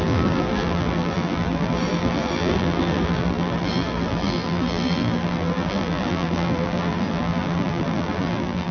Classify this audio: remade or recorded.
remade